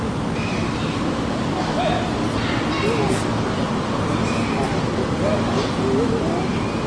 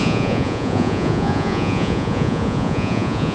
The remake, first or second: second